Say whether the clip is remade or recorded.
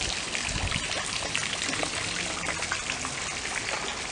recorded